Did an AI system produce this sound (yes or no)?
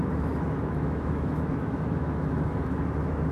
yes